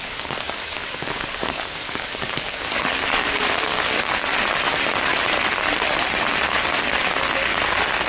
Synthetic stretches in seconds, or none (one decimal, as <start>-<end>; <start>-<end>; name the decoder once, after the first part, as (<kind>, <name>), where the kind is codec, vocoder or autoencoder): 0.0-4.3 (codec, DAC)

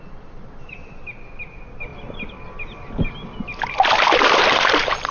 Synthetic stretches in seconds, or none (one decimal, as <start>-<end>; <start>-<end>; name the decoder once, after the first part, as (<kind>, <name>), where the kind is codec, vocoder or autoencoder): none

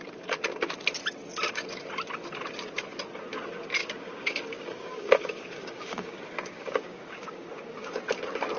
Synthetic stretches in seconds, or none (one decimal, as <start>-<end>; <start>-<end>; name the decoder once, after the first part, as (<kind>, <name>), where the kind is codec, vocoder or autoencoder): 3.8-8.0 (codec, DAC)

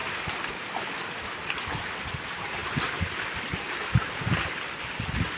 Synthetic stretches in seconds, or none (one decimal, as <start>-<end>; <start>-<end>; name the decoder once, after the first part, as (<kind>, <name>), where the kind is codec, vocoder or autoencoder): none

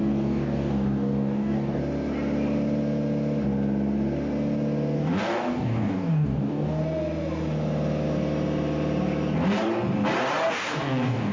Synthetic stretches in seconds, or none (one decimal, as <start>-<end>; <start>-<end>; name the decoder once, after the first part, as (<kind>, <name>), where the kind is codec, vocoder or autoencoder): 0.0-1.8 (codec, DAC); 5.0-6.8; 10.5-11.3

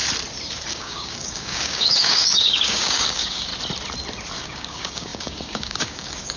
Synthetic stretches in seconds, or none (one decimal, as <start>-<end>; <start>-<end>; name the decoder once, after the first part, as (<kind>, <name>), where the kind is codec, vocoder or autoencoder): 0.7-3.5 (codec, DAC); 4.4-6.4